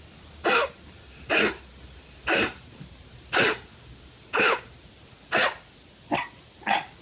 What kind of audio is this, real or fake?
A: real